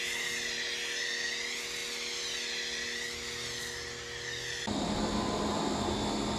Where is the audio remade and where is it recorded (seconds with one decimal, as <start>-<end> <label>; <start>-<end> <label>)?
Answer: 0.0-6.4 recorded